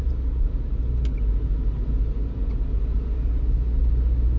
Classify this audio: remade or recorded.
recorded